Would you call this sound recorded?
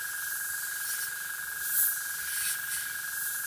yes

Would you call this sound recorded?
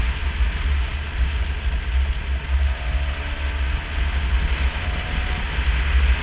yes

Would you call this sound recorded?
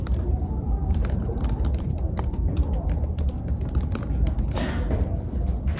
no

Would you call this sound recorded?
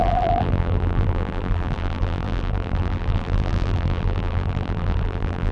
no